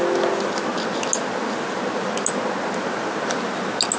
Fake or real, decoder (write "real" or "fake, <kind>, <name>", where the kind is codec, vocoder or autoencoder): real